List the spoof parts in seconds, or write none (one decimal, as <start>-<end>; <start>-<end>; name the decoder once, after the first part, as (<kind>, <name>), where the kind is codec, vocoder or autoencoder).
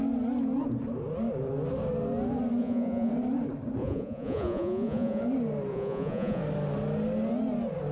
2.6-3.1 (vocoder, Vocos); 3.8-5.2; 5.7-6.4